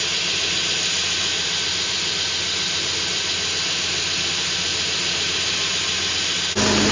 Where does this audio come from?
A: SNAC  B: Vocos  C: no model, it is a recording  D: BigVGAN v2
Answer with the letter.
C